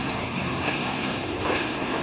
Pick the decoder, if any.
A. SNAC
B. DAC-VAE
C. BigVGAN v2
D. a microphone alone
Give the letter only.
A